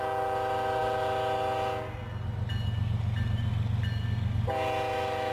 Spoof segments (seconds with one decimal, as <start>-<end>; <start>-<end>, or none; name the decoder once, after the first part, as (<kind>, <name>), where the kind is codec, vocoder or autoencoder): none